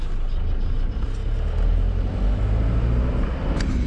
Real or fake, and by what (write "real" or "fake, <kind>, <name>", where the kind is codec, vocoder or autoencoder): real